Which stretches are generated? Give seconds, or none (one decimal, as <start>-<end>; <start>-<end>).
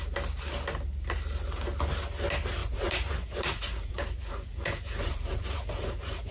2.6-6.3